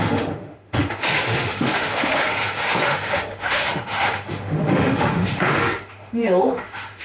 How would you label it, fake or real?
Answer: fake